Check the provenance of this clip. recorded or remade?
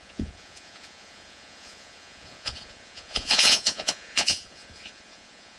remade